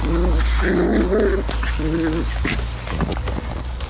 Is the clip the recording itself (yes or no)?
yes